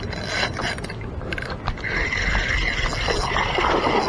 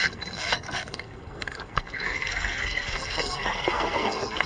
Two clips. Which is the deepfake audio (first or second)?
second